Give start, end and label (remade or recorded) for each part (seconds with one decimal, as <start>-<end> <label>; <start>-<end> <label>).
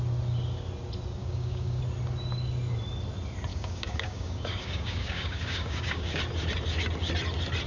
0.0-1.2 recorded; 1.2-1.8 remade; 1.8-3.5 recorded; 3.5-6.2 remade; 6.2-7.7 recorded